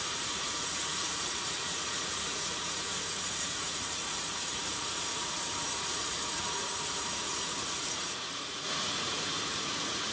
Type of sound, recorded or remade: remade